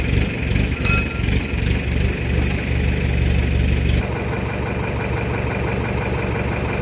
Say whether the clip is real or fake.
real